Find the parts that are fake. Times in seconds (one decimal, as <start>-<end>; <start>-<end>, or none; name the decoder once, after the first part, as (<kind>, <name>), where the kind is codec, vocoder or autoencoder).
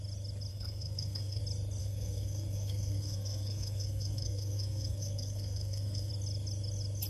0.5-1.4 (codec, SNAC); 1.8-6.1